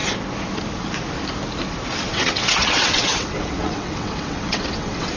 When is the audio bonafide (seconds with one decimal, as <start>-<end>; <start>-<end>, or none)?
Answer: 0.0-2.1